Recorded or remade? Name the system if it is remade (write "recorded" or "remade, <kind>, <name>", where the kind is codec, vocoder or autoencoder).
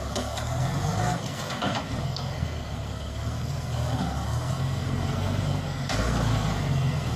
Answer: remade, codec, SNAC